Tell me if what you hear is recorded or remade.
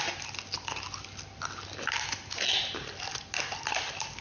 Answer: recorded